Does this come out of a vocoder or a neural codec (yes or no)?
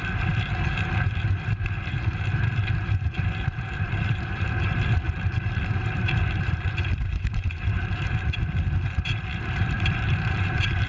yes